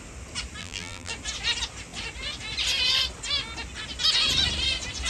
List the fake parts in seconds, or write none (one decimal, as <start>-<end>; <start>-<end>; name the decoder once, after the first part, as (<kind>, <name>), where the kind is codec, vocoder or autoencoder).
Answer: 0.6-1.1 (vocoder, BigVGAN v2)